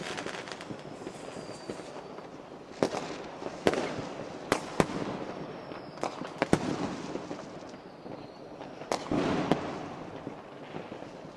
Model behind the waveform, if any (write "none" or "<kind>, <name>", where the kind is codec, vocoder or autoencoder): none